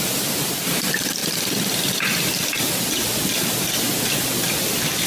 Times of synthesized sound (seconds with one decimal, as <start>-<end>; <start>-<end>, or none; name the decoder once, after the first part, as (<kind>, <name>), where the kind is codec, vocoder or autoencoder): 1.2-2.1 (vocoder, BigVGAN v2)